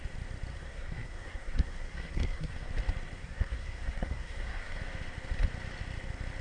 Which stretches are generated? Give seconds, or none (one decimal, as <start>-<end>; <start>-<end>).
0.5-2.7; 3.2-4.8